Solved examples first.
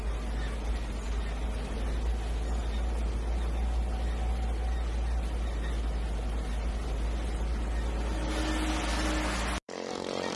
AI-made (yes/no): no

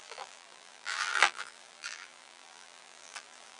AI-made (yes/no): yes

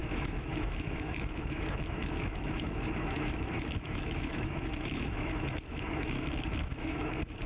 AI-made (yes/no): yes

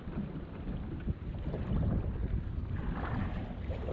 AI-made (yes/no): no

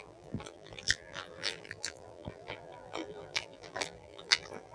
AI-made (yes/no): yes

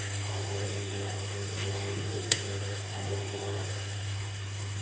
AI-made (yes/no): yes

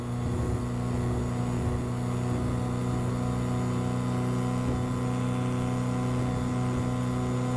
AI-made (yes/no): no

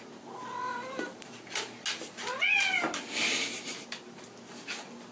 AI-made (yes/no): no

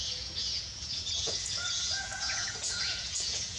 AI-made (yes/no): yes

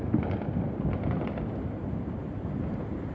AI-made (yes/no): no